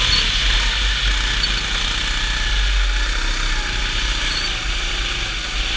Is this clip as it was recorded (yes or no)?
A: yes